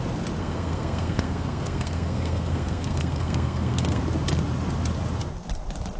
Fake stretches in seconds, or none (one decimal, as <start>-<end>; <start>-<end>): 0.4-4.0